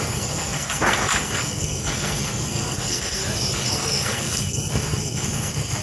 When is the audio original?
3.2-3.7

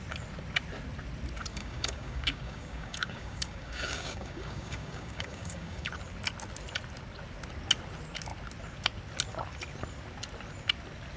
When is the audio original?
0.0-1.5; 5.9-11.2

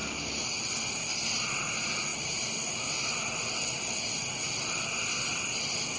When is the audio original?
0.6-6.0